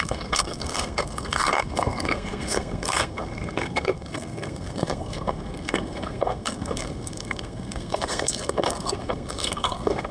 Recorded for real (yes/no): no